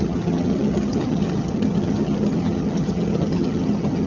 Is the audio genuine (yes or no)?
no